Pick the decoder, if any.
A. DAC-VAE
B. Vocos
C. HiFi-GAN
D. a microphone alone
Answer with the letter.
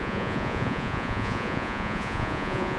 B